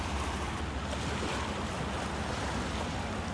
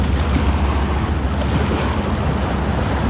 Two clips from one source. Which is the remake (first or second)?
first